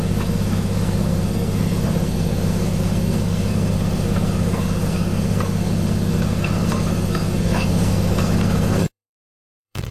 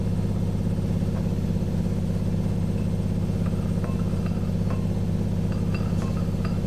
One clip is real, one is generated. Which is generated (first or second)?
first